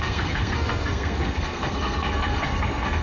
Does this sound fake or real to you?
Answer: fake